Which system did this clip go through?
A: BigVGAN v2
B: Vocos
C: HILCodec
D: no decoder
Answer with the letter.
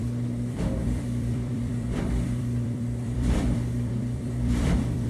A